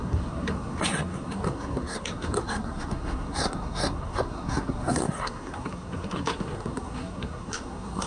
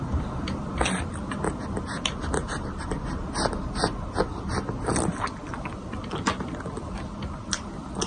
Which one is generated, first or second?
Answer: first